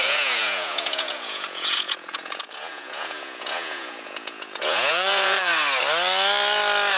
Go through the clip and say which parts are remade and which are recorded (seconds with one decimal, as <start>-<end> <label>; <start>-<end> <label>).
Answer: 0.0-5.5 remade; 5.5-7.0 recorded